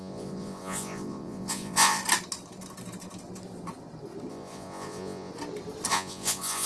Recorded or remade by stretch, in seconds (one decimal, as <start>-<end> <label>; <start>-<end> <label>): 0.0-2.0 remade; 2.0-4.3 recorded; 4.3-5.3 remade; 5.3-5.9 recorded; 5.9-6.7 remade

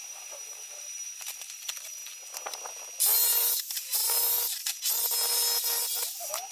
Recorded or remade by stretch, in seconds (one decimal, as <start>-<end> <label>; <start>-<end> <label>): 0.0-2.0 remade; 2.0-3.4 recorded; 3.4-4.0 remade; 4.0-6.5 recorded

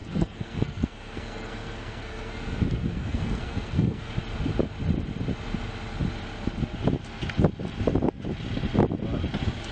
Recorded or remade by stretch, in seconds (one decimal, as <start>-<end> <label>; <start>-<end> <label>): 0.0-4.1 remade; 4.1-9.7 recorded

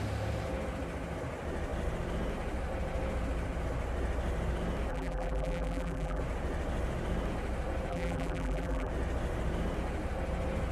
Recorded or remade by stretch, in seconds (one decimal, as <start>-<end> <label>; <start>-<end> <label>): 0.0-4.9 recorded; 4.9-6.2 remade; 6.2-7.9 recorded; 7.9-8.9 remade; 8.9-10.7 recorded